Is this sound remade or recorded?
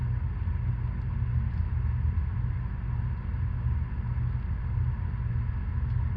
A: recorded